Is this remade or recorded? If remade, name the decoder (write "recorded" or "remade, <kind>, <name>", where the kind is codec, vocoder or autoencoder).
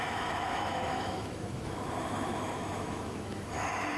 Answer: remade, autoencoder, DAC-VAE